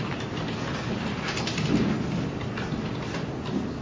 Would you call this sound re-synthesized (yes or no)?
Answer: no